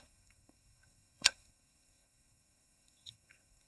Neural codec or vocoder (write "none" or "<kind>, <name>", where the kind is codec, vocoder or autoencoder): codec, SNAC